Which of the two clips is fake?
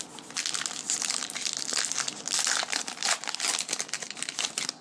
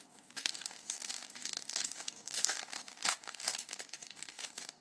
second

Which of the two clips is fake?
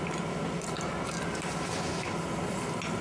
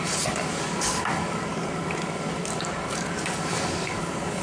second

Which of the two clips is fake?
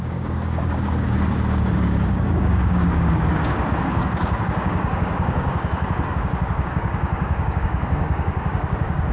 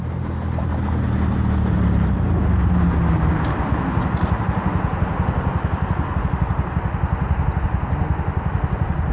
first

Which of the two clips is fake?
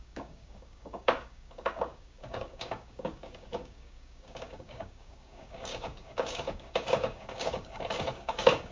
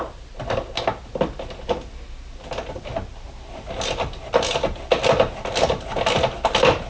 first